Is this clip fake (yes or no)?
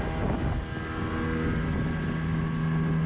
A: no